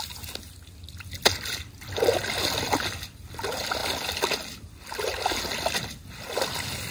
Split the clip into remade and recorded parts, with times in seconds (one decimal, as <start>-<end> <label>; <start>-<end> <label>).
0.0-2.2 recorded; 2.2-2.8 remade; 2.8-6.9 recorded